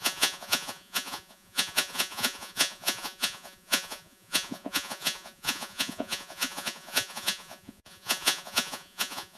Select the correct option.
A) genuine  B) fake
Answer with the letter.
B